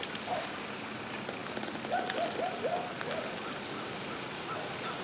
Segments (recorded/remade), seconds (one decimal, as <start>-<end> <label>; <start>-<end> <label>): 0.0-5.0 recorded